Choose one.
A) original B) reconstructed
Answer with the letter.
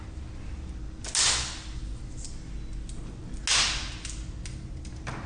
A